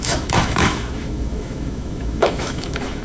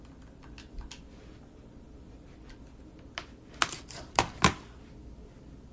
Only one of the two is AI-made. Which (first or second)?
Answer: first